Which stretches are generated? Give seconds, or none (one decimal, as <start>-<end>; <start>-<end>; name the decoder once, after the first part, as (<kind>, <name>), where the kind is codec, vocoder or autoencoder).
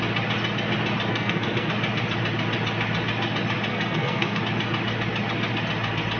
1.1-1.7 (codec, SNAC); 3.7-4.4